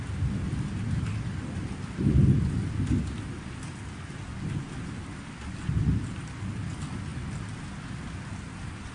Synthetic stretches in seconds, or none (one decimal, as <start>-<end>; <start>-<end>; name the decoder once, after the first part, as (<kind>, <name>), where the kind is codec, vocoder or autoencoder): none